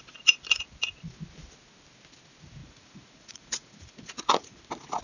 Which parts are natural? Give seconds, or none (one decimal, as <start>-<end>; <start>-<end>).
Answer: 0.0-2.6; 4.6-5.0